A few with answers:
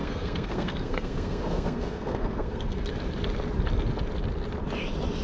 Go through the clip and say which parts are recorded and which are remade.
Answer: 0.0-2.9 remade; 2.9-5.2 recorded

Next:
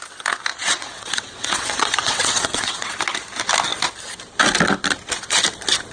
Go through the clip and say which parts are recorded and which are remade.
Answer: 0.0-0.5 recorded; 0.5-2.9 remade; 2.9-5.9 recorded

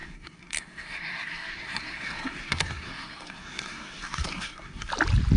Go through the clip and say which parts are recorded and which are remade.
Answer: 0.0-4.9 remade; 4.9-5.4 recorded

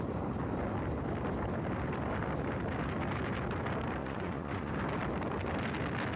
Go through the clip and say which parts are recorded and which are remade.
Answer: 0.0-4.0 recorded; 4.0-4.7 remade; 4.7-6.2 recorded